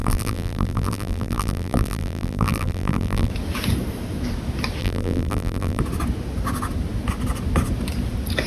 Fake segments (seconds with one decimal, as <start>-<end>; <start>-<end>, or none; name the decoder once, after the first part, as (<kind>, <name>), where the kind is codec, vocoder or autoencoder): 0.0-3.3 (vocoder, BigVGAN v2); 4.8-5.8